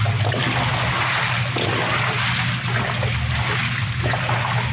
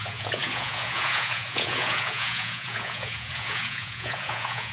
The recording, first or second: first